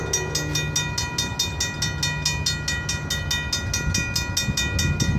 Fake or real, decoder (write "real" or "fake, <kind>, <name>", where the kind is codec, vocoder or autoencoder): real